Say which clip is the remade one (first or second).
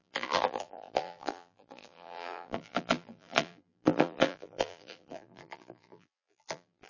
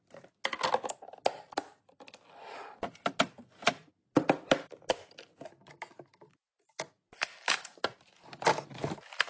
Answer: first